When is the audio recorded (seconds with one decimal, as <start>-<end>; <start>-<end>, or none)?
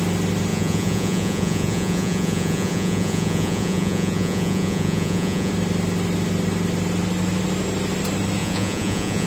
0.0-0.5; 5.5-8.4